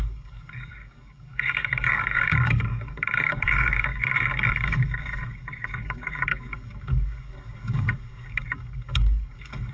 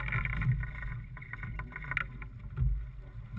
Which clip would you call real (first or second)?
second